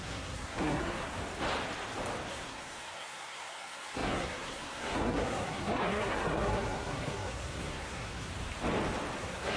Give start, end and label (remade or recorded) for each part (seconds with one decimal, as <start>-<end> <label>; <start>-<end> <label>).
0.0-1.2 remade; 1.2-2.3 recorded; 2.3-8.3 remade; 8.3-9.2 recorded; 9.2-9.6 remade

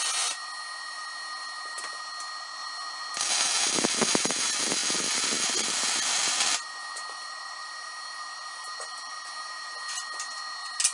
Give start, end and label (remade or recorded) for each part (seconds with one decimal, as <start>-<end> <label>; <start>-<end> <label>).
0.0-10.9 recorded

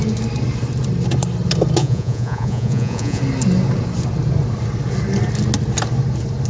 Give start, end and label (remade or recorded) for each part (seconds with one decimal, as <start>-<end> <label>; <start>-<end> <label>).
0.0-1.8 recorded; 1.8-3.2 remade; 3.2-6.5 recorded

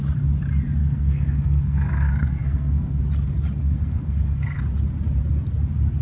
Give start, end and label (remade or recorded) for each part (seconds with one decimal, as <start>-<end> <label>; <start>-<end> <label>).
0.0-0.8 recorded; 0.8-3.0 remade; 3.0-3.6 recorded; 3.6-4.6 remade; 4.6-6.0 recorded